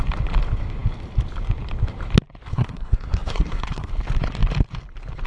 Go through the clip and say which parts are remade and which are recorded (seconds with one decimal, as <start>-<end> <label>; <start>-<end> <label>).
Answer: 0.0-2.5 recorded; 2.5-3.9 remade; 3.9-5.3 recorded